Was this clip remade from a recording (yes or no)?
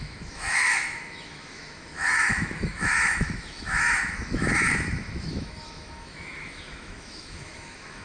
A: yes